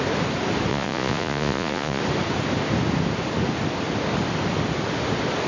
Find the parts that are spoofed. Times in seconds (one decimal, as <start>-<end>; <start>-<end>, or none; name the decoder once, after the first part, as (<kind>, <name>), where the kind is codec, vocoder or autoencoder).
0.7-2.0 (vocoder, Vocos)